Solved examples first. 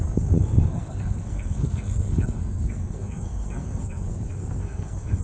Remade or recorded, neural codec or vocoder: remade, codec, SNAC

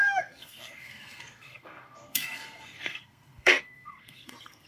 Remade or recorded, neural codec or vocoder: remade, codec, SNAC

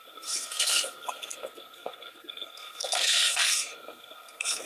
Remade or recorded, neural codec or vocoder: remade, codec, SNAC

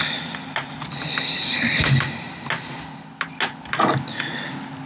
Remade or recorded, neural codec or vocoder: recorded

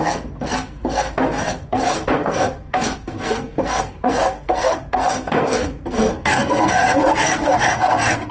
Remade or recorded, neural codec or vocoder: remade, codec, SNAC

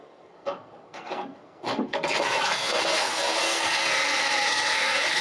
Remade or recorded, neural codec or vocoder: remade, codec, SNAC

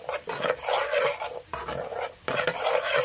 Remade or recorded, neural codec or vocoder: recorded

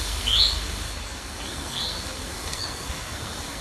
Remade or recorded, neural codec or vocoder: remade, codec, SNAC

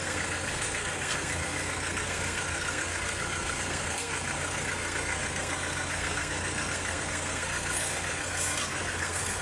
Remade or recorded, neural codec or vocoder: remade, codec, SNAC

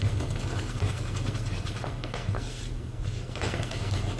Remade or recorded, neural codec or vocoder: remade, codec, SNAC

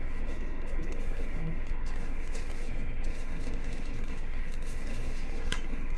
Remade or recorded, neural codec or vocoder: remade, codec, SNAC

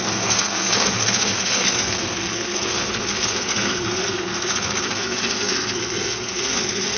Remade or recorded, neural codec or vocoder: remade, codec, SNAC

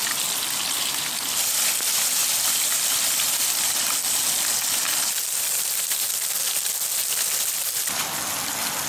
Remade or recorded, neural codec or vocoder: recorded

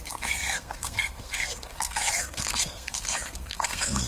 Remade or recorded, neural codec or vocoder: remade, codec, SNAC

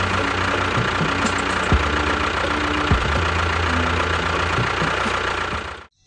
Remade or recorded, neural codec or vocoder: recorded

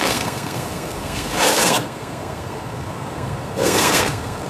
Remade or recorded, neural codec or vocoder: remade, codec, SNAC